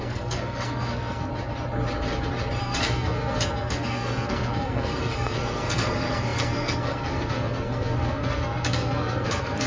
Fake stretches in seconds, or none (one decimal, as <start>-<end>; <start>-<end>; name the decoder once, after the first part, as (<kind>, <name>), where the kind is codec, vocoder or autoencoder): 0.0-1.3 (codec, SNAC); 2.6-9.7